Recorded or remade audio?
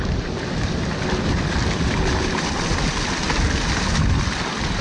recorded